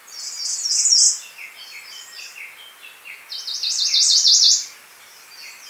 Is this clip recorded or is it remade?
recorded